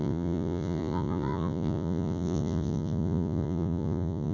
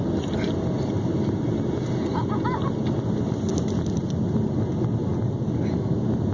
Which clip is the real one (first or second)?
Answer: second